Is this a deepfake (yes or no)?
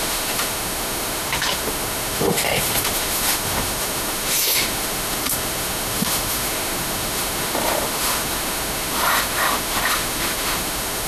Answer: yes